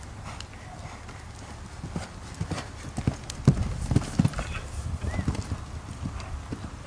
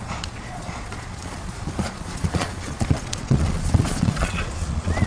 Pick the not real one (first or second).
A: second